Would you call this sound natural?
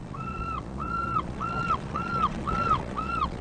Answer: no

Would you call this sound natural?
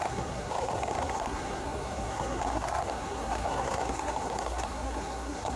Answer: no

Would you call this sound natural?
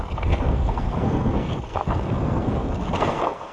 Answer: no